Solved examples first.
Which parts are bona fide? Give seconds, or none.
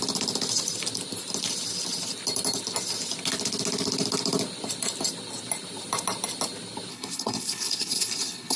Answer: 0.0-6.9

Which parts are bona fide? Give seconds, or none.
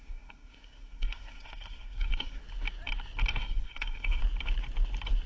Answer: 2.4-3.3; 4.2-5.3